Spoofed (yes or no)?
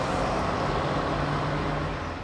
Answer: no